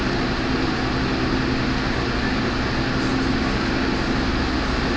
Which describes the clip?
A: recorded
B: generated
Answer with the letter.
A